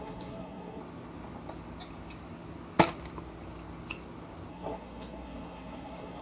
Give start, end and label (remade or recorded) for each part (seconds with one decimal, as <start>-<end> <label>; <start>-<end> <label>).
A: 0.0-0.8 remade; 0.8-4.5 recorded; 4.5-6.2 remade